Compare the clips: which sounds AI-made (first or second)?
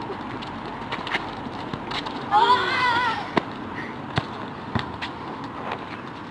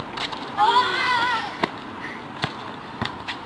second